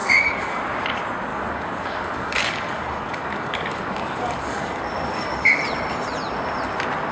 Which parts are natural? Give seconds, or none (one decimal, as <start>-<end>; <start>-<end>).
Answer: 0.6-1.3; 5.6-7.1